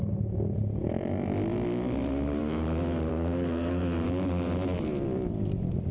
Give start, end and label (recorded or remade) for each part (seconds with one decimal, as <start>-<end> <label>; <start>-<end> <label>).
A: 0.0-3.1 recorded; 3.1-3.8 remade; 3.8-5.9 recorded